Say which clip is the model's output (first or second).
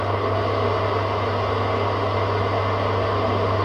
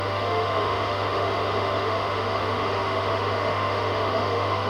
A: second